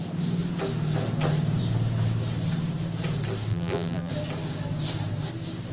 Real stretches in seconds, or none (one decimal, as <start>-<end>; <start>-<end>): 0.0-3.5; 4.1-5.7